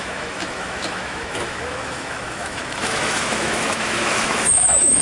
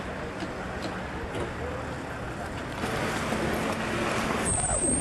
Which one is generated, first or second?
first